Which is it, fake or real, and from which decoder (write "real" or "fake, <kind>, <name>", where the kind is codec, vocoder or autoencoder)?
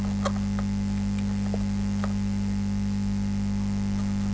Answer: real